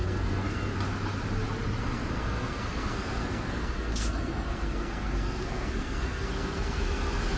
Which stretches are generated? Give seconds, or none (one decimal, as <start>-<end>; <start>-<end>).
0.0-0.7; 1.8-7.4